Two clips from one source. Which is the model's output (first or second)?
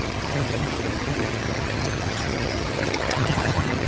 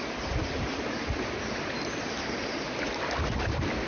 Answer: first